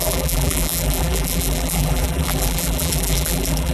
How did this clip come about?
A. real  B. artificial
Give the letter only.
B